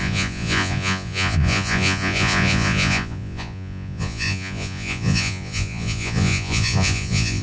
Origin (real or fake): fake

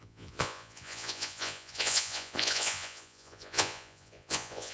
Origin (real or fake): fake